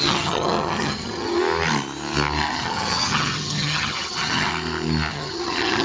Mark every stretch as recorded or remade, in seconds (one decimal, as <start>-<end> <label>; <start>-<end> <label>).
0.0-1.4 remade; 1.4-2.5 recorded; 2.5-4.5 remade; 4.5-5.1 recorded; 5.1-5.8 remade